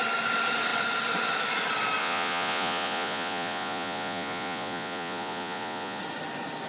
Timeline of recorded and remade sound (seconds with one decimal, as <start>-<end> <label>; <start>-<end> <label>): 0.0-2.0 recorded; 2.0-6.0 remade; 6.0-6.7 recorded